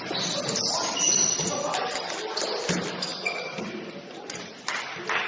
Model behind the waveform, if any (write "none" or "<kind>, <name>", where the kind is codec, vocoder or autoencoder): none